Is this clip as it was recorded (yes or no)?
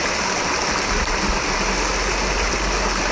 yes